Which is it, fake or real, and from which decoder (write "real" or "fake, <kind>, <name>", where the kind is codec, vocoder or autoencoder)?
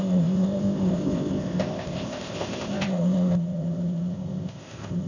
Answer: fake, codec, ZipCodec